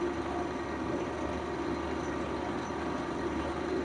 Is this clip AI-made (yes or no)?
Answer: no